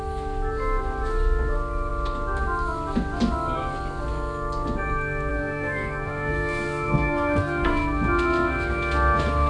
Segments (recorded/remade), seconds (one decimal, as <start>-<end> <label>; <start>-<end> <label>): 0.0-5.3 recorded; 5.3-7.8 remade; 7.8-9.5 recorded